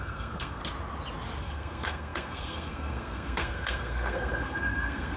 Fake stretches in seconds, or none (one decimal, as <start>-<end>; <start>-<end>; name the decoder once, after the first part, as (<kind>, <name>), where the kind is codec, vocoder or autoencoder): 0.0-0.6 (codec, SNAC); 1.4-5.2

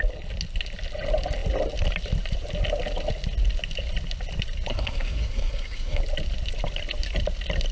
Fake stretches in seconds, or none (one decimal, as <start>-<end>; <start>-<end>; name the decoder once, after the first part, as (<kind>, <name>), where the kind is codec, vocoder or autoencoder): 4.7-6.0 (codec, SNAC)

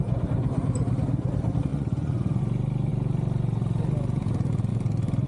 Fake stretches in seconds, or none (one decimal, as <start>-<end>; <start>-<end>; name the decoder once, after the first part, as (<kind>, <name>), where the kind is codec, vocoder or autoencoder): 1.7-2.4 (vocoder, Vocos)

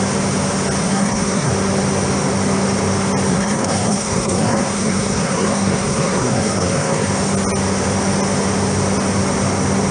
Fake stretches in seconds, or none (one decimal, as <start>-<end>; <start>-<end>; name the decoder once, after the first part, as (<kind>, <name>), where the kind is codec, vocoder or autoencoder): 0.8-1.5 (codec, SNAC); 3.3-7.1

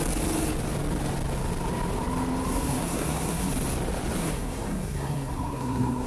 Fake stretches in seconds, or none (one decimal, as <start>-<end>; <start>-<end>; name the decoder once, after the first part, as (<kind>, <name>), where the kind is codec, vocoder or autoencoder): 2.5-3.5 (codec, SNAC); 4.2-6.1

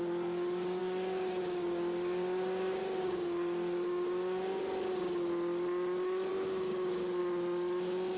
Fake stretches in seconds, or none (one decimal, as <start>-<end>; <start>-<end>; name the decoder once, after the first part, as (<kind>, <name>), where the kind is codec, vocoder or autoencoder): 0.8-4.6 (codec, DAC); 6.3-7.2